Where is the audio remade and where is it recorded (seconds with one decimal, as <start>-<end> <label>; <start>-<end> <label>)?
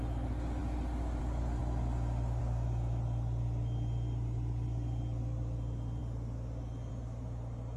0.0-7.8 recorded